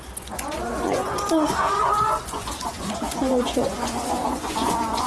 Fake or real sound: fake